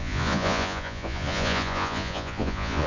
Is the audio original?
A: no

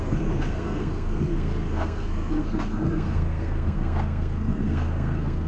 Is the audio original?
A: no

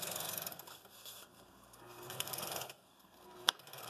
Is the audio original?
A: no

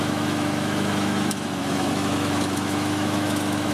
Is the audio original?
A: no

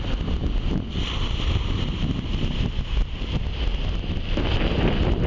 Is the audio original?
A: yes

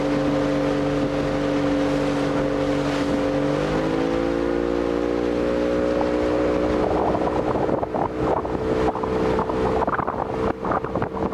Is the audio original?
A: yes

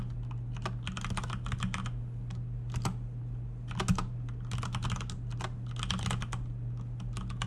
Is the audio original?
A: yes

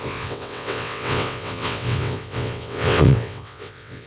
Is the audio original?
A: no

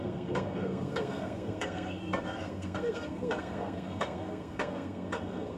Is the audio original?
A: no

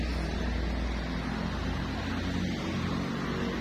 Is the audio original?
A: yes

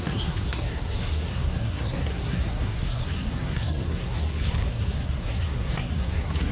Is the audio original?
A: no